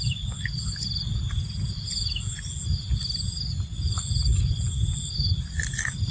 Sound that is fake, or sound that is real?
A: real